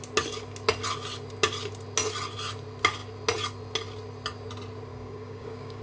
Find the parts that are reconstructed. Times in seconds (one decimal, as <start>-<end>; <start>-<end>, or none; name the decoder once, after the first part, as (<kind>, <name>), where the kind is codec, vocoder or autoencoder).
4.9-5.8 (codec, DAC)